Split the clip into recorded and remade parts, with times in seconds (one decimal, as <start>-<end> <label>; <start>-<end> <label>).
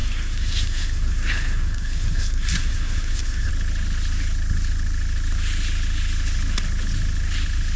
0.0-3.5 remade; 3.5-7.8 recorded